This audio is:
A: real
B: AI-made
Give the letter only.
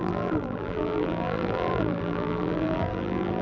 B